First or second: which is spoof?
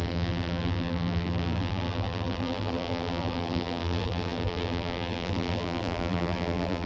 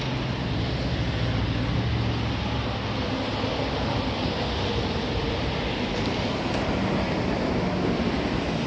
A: first